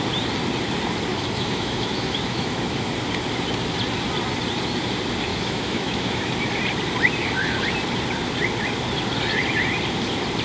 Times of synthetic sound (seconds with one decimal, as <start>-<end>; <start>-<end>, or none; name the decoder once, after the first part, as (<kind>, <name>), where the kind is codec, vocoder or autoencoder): 1.1-2.9 (autoencoder, DAC-VAE); 5.3-6.3